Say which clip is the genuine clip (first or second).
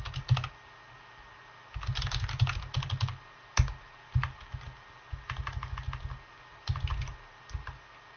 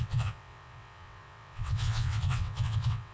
first